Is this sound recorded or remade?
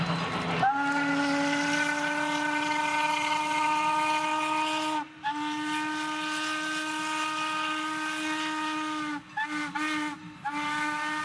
recorded